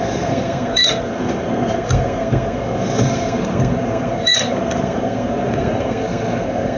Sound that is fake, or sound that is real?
fake